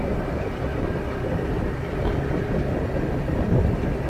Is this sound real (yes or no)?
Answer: yes